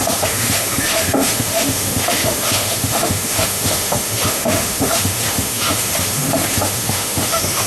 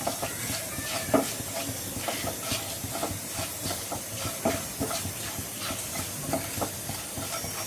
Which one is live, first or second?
second